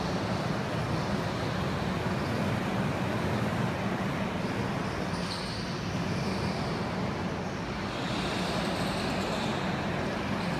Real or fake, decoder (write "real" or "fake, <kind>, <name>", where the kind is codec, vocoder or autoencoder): real